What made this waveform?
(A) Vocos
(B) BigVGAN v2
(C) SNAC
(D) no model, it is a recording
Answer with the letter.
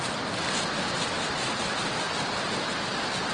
D